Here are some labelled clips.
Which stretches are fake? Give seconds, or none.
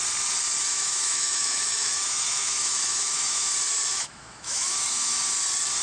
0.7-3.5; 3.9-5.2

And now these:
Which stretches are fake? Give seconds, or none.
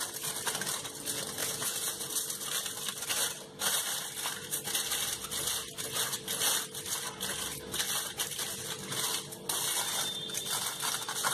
1.4-2.1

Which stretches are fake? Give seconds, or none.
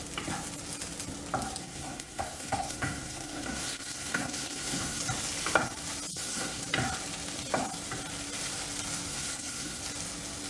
1.6-5.0; 6.1-6.6; 9.1-9.8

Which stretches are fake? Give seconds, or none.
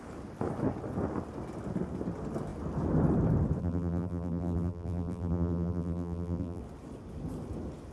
3.6-6.6